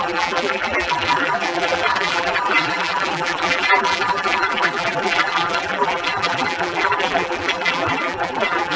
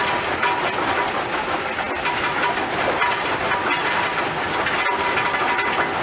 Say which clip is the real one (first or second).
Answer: second